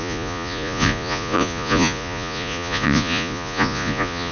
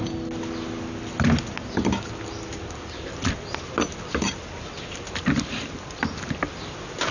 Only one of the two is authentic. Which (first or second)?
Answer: second